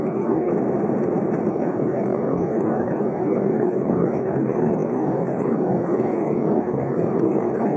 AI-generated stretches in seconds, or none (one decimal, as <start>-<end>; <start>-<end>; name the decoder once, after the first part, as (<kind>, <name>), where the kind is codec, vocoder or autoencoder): 0.0-0.5 (codec, DAC); 1.5-7.8